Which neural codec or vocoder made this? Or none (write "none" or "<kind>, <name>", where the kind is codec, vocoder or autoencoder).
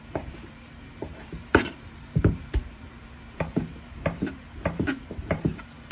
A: vocoder, BigVGAN v2